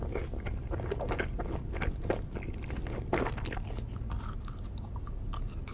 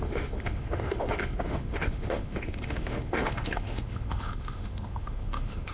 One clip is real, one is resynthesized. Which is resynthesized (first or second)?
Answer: second